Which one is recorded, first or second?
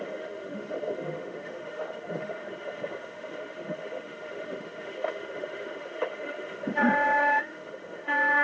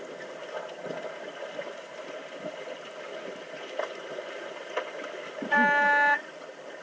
second